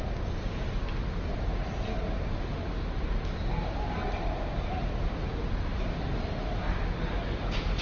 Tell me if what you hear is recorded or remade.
recorded